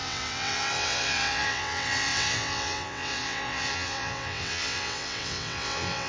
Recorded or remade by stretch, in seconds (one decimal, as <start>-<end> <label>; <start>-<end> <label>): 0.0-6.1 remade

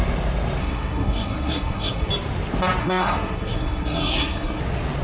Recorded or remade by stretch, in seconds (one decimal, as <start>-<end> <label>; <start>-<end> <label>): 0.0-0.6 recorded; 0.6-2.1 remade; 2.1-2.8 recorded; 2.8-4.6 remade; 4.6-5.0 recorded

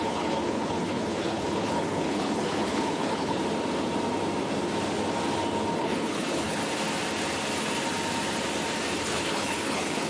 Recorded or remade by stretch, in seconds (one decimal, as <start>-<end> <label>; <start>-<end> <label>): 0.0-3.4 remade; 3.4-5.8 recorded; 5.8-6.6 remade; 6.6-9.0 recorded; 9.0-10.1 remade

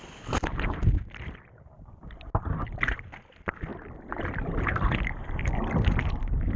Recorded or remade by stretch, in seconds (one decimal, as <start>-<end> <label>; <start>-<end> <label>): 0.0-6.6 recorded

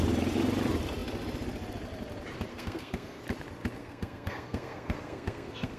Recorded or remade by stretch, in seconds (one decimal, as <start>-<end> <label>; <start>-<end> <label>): 0.0-2.5 recorded; 2.5-3.2 remade; 3.2-3.8 recorded; 3.8-5.8 remade

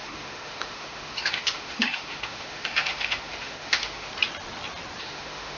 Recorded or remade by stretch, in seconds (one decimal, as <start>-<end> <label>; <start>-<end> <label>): 0.0-4.1 remade; 4.1-5.0 recorded; 5.0-5.6 remade

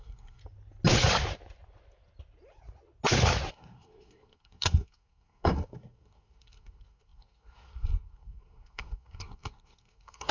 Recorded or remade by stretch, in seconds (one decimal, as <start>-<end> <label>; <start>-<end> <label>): 0.0-0.4 remade; 0.4-3.5 recorded; 3.5-10.3 remade